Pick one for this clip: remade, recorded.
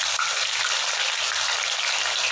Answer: recorded